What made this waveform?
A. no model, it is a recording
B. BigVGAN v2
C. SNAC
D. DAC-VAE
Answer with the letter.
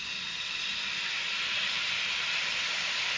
A